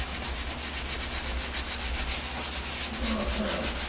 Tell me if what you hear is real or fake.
real